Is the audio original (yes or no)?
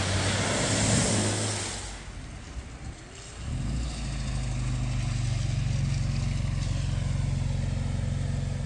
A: yes